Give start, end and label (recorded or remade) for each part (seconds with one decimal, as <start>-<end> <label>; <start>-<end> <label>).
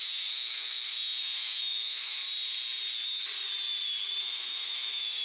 0.0-2.2 remade; 2.2-4.2 recorded; 4.2-5.2 remade